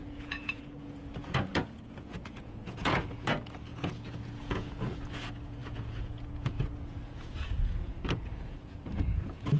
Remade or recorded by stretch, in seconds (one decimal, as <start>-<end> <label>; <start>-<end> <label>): 0.0-9.6 remade

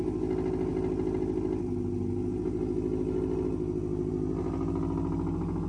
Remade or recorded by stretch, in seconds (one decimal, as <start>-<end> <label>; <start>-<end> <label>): 0.0-5.7 recorded

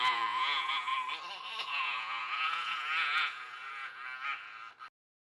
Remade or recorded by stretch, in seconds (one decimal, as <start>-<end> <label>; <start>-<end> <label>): 0.0-0.9 remade; 0.9-1.6 recorded; 1.6-4.0 remade; 4.0-5.3 recorded

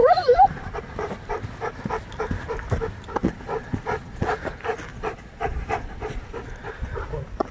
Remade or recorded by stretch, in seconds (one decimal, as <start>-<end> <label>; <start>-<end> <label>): 0.0-3.2 recorded; 3.2-4.3 remade; 4.3-4.9 recorded; 4.9-6.7 remade; 6.7-7.5 recorded

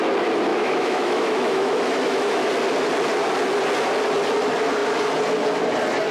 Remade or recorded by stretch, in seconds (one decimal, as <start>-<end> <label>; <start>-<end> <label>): 0.0-0.5 recorded; 0.5-2.5 remade; 2.5-6.1 recorded